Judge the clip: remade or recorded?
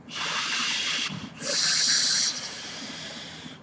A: remade